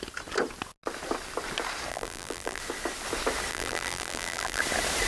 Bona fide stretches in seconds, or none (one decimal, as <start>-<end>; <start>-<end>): 0.0-1.9; 2.6-3.5; 4.6-5.1